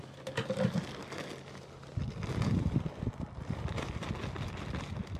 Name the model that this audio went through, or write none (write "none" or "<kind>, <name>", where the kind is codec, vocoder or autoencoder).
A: none